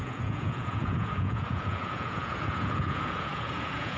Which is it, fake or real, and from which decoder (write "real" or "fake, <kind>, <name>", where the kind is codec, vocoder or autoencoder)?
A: fake, vocoder, Vocos